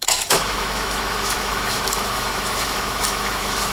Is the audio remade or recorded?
remade